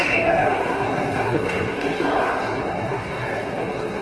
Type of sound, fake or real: fake